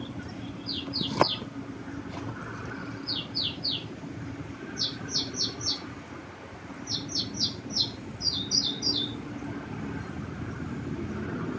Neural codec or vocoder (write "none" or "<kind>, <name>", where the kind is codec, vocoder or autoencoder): none